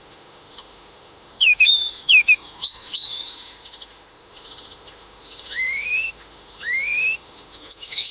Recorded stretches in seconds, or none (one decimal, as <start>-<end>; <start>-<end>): none